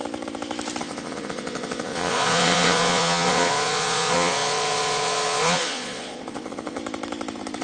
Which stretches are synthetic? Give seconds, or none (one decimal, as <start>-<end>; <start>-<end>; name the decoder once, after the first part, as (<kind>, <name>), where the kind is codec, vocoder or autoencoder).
0.8-6.8 (vocoder, Vocos)